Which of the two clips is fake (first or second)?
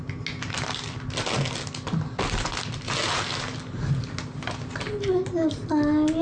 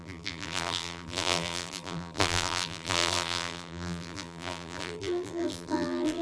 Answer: second